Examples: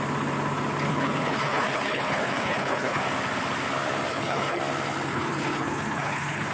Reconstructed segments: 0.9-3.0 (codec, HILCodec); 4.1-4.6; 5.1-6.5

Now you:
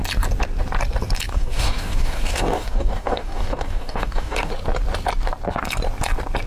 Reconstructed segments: 1.3-4.5 (codec, DAC)

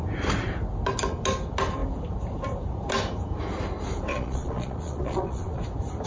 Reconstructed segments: 4.1-5.6 (vocoder, Vocos)

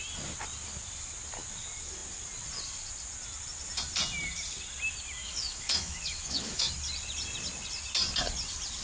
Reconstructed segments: 5.2-6.7 (autoencoder, DAC-VAE)

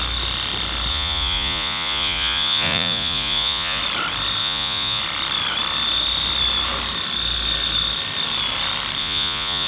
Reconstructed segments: 0.9-3.8 (vocoder, Vocos); 4.4-5.0; 9.0-9.7

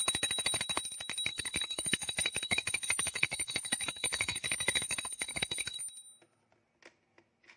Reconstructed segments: 1.3-5.8 (codec, SNAC)